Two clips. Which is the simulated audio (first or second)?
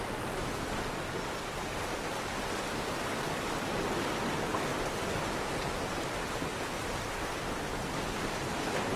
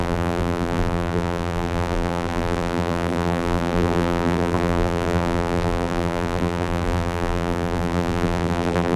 second